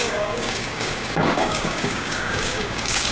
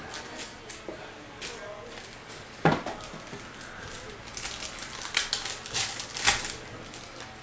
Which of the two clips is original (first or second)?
second